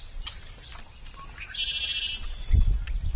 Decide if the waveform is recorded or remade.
recorded